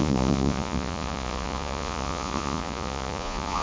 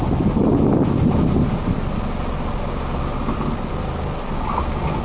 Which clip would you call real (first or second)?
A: second